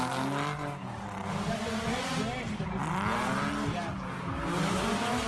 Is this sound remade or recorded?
recorded